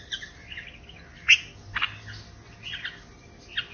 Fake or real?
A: real